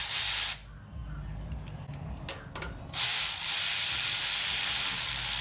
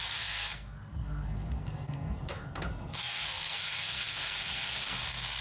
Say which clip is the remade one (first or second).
second